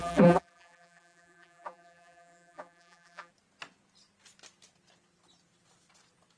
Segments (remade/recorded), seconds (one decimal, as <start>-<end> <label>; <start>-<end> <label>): 0.0-3.3 remade; 3.3-6.4 recorded